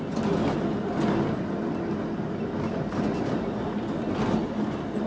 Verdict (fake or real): real